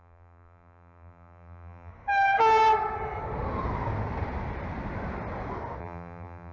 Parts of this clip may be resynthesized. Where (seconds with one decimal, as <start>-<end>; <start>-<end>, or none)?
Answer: 0.0-1.9; 5.8-6.5